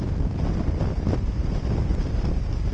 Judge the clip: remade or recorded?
recorded